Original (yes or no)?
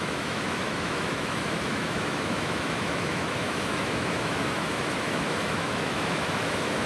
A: no